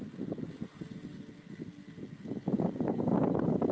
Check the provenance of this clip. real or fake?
real